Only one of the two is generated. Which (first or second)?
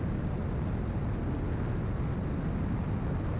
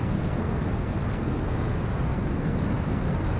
second